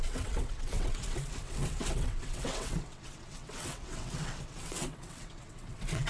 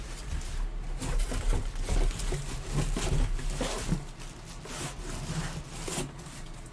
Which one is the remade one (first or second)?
first